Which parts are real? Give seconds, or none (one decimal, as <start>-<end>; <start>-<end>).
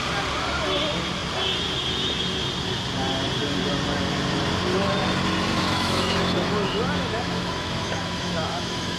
0.0-5.5